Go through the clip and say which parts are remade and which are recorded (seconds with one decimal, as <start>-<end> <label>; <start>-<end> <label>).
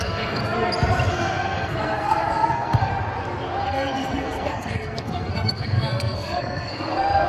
0.0-0.4 remade; 0.4-1.1 recorded; 1.1-2.9 remade; 2.9-3.6 recorded; 3.6-7.3 remade